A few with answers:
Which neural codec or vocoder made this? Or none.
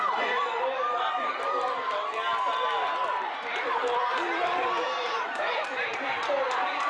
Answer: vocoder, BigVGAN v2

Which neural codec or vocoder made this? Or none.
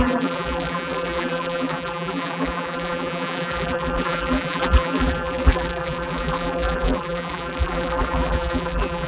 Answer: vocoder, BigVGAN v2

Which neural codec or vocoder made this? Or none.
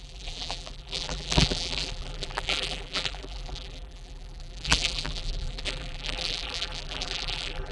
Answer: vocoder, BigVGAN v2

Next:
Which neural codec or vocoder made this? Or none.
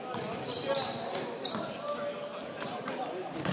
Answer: none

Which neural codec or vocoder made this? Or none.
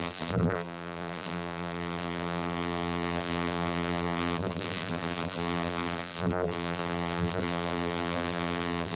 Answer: vocoder, BigVGAN v2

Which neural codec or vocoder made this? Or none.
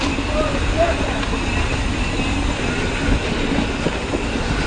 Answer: none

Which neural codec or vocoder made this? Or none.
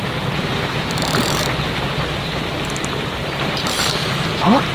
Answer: vocoder, BigVGAN v2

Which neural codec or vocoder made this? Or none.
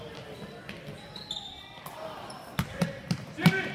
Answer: none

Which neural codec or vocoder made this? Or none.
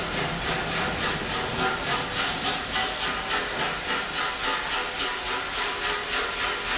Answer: none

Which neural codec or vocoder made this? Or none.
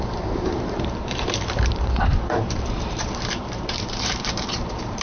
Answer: vocoder, BigVGAN v2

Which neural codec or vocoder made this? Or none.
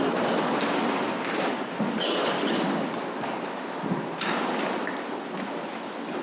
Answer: none